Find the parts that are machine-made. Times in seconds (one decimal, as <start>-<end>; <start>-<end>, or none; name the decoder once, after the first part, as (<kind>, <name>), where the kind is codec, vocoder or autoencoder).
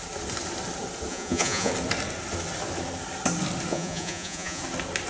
1.1-1.7 (vocoder, Vocos); 3.7-4.6